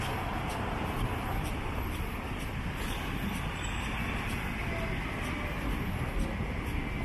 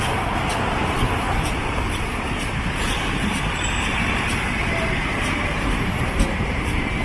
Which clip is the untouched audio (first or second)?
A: first